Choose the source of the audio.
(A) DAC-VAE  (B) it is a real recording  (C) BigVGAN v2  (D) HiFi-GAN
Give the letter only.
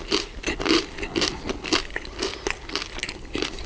B